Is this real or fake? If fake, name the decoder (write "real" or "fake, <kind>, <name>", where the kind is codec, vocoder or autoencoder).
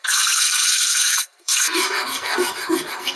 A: fake, codec, SNAC